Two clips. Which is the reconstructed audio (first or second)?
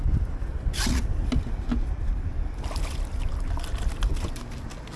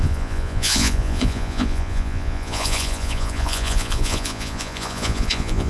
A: second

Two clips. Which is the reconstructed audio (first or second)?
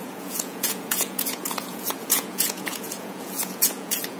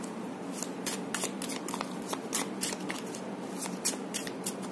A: first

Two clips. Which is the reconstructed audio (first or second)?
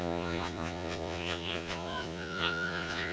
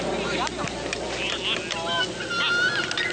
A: first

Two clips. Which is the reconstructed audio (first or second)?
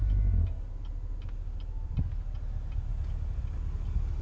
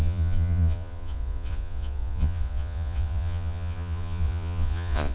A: second